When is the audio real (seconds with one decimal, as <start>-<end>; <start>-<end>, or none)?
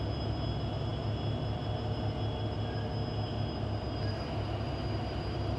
0.0-5.6